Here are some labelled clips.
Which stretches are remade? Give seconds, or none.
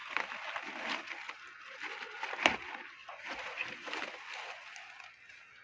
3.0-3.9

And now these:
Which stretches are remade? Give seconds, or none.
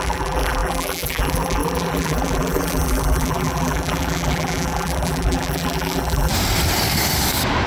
0.0-6.3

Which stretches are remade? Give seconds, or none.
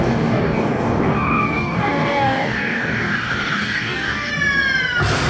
0.0-4.3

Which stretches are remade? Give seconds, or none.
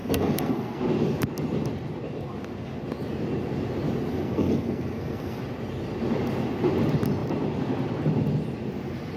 0.0-0.8; 4.1-5.4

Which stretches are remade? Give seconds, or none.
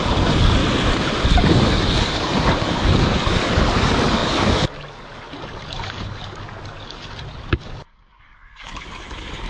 0.0-0.6; 1.4-9.5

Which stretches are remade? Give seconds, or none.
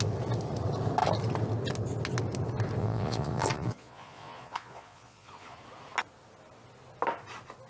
2.8-5.6